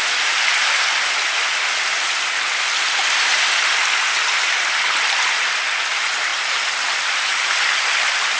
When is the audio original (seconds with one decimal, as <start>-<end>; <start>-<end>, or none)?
0.0-8.4